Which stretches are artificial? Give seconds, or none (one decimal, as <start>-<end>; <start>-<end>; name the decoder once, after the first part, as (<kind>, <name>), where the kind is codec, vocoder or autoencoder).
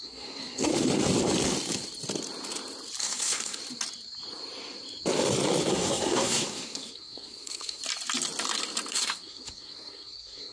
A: 0.0-0.7 (codec, SNAC); 3.0-3.6; 5.7-7.8; 8.9-10.5